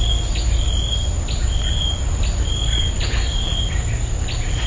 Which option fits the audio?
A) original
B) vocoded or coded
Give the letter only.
A